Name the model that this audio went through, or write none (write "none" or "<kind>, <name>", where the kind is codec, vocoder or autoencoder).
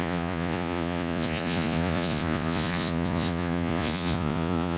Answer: vocoder, Vocos